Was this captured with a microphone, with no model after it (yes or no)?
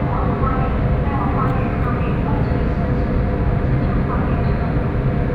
yes